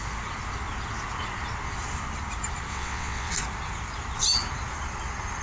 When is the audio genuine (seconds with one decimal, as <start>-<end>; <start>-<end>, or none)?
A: 0.0-2.7; 3.3-5.4

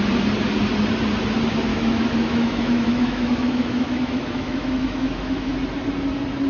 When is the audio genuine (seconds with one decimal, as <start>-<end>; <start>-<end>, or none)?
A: 0.0-1.7; 5.6-6.5

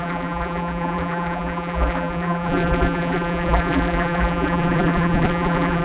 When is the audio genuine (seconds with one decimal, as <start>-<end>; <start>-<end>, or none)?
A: none

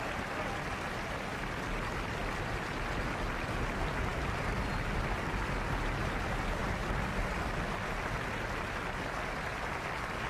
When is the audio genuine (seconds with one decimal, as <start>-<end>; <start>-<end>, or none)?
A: 0.0-10.3

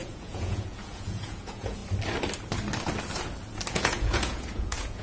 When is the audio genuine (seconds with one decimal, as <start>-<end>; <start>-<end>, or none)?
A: 1.8-3.7

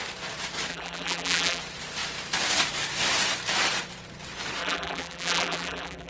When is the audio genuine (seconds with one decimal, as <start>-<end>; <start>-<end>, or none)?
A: 0.0-0.7; 1.6-4.6

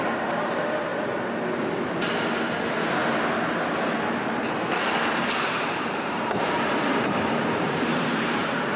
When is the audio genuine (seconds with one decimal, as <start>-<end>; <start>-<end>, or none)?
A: 0.9-5.5